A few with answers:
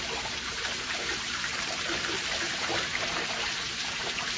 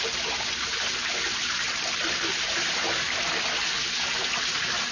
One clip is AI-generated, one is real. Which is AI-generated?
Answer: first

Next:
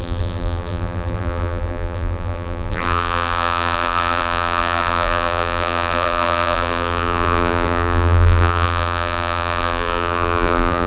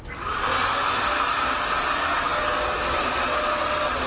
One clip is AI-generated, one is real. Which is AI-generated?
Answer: first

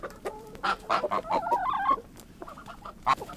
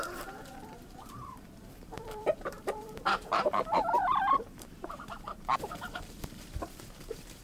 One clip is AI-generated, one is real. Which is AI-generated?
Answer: second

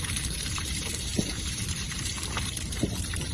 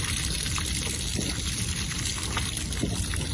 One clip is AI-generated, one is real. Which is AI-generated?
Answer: first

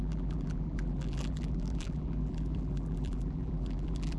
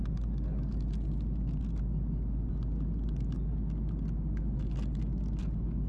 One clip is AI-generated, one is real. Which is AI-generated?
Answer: first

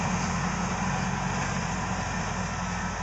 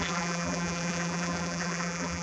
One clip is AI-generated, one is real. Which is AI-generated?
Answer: second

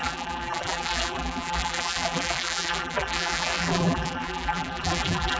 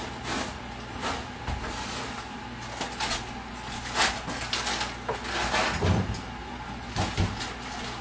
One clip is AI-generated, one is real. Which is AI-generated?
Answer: first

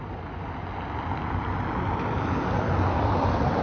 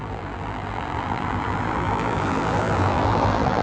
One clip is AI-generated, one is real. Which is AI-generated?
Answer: second